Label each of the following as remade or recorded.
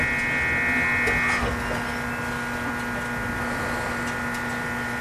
recorded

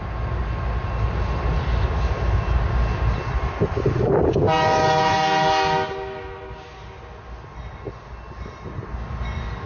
recorded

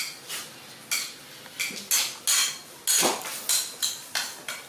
recorded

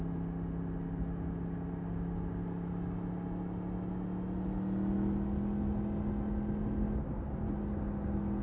recorded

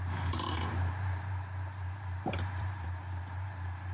remade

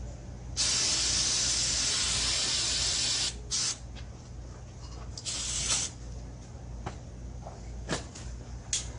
recorded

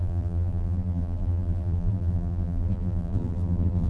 remade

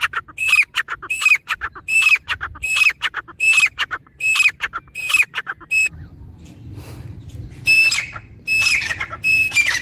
remade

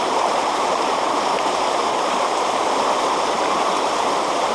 remade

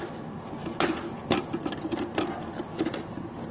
recorded